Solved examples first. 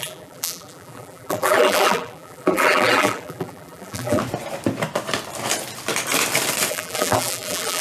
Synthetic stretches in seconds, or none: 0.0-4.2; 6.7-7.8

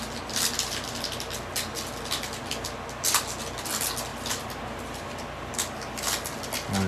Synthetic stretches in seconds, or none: 4.1-5.5

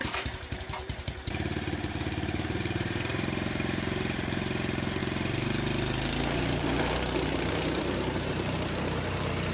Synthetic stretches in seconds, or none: 0.0-5.0; 6.4-9.5

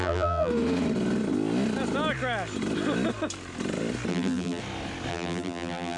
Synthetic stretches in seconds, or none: 0.0-0.5; 4.1-4.6; 5.1-6.0

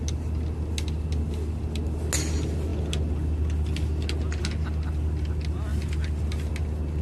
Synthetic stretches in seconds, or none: none

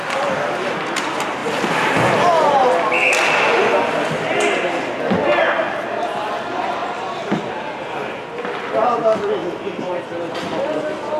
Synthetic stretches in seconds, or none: 1.4-2.1; 5.4-6.3; 9.4-10.1